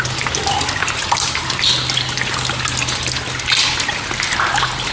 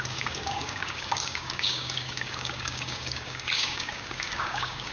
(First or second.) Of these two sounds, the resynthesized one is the second